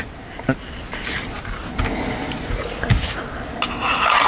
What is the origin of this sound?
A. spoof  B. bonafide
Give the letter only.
B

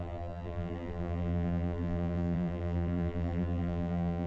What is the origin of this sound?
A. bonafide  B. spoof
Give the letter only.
B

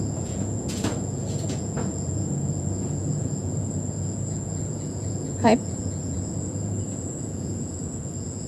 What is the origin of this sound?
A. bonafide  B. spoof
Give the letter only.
B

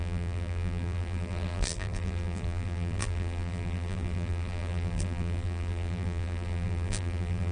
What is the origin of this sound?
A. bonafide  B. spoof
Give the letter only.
B